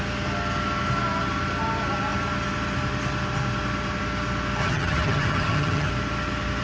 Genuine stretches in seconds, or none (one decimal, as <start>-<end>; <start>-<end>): 0.0-4.6; 5.9-6.6